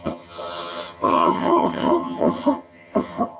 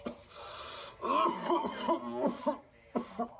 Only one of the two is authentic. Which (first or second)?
second